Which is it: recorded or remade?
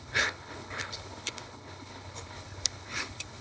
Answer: remade